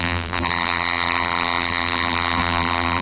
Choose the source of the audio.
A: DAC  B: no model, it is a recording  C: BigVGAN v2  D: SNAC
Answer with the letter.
C